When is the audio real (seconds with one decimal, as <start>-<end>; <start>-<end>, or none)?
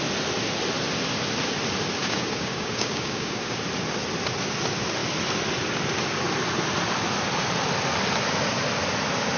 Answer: 0.0-2.0; 3.6-9.4